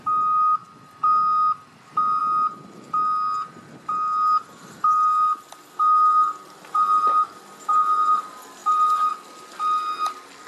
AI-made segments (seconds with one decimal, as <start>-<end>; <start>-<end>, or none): none